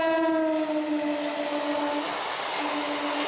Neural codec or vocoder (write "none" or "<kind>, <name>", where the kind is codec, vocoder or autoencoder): none